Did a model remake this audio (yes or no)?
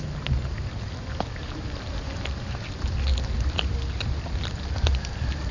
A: no